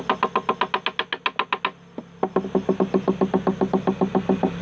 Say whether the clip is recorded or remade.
recorded